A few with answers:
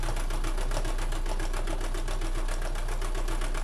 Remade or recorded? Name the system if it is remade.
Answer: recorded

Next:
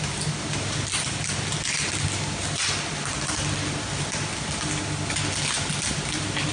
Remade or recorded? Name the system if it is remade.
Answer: recorded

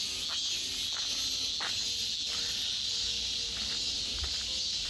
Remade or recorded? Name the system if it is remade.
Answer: recorded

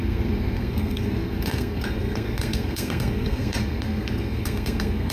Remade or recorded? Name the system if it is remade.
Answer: remade, codec, SNAC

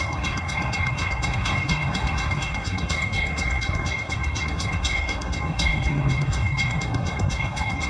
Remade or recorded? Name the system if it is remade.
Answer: remade, codec, SNAC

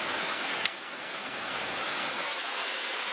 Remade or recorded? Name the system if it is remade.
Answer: remade, codec, SNAC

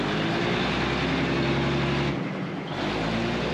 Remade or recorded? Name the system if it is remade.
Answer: recorded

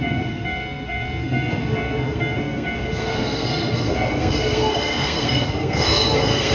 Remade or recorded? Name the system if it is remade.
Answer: remade, codec, SNAC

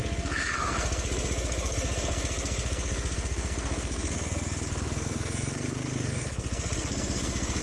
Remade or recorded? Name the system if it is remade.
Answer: remade, codec, SNAC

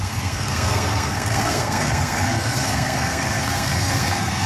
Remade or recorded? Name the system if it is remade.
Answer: remade, codec, SNAC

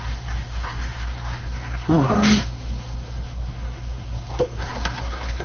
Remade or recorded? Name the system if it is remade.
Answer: remade, codec, SNAC